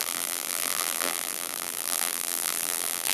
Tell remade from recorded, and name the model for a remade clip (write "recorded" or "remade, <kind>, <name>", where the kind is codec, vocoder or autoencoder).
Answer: remade, vocoder, BigVGAN v2